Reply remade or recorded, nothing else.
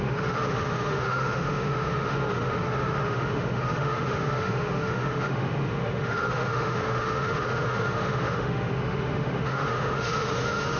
remade